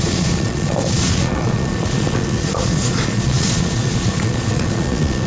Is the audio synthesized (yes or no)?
yes